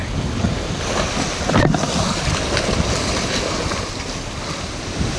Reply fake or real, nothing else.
real